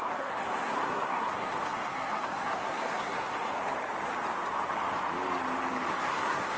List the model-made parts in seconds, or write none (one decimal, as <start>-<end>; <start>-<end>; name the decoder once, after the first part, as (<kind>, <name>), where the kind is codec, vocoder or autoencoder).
0.0-3.5 (codec, SNAC); 5.9-6.6